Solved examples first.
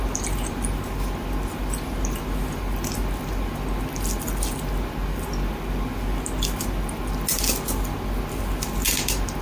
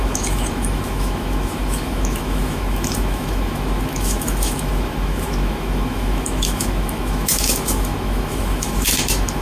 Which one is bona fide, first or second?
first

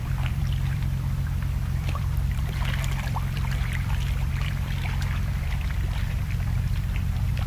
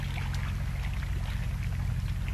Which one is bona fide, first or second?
second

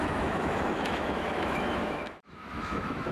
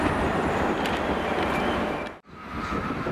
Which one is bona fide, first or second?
second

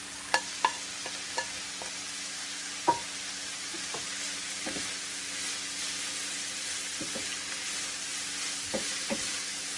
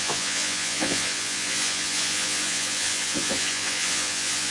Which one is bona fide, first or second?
first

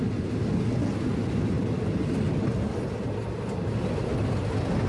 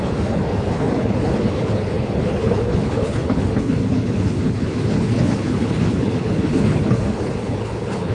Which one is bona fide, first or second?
first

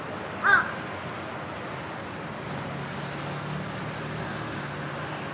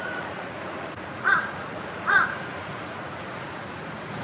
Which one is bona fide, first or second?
first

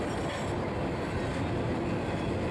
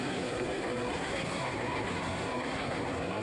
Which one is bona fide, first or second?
first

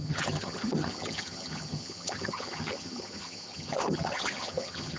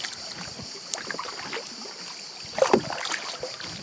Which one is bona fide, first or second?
second